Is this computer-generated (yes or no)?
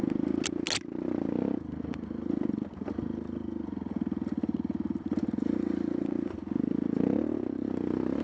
no